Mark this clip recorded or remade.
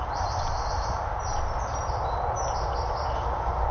recorded